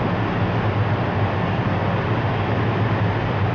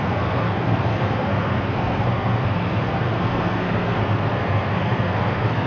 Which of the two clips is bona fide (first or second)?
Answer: first